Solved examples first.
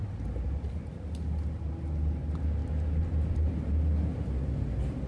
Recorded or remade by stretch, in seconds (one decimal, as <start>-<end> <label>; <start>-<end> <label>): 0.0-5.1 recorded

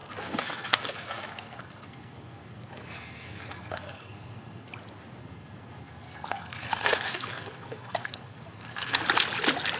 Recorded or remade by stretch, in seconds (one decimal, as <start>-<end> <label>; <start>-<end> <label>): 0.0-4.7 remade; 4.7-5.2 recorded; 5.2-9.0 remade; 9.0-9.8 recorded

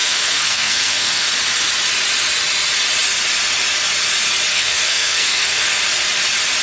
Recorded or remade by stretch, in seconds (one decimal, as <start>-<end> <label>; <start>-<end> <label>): 0.0-1.3 remade; 1.3-4.5 recorded; 4.5-5.8 remade; 5.8-6.6 recorded

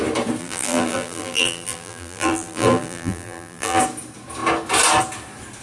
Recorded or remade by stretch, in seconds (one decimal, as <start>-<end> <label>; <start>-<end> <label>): 0.0-0.4 recorded; 0.4-3.8 remade; 3.8-5.6 recorded

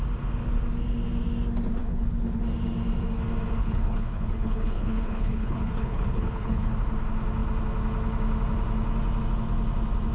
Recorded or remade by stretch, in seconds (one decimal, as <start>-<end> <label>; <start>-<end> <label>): 0.0-1.8 recorded; 1.8-2.4 remade; 2.4-3.6 recorded; 3.6-6.7 remade; 6.7-10.1 recorded